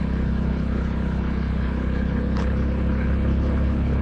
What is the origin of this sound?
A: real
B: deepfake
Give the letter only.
B